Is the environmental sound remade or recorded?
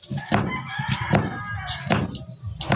recorded